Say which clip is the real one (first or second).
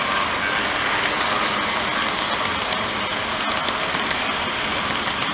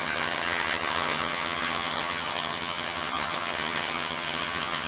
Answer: first